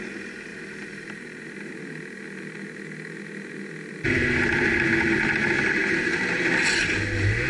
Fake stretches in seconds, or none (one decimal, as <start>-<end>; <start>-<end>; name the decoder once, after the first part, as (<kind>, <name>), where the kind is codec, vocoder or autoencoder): 0.5-1.7 (vocoder, BigVGAN v2)